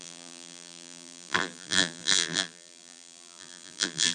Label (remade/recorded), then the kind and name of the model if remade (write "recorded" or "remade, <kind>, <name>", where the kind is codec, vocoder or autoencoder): remade, vocoder, BigVGAN v2